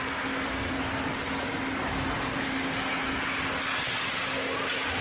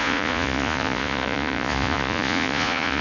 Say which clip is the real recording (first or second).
first